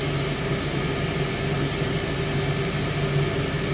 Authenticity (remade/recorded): recorded